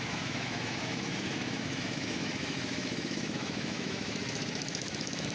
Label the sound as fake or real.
fake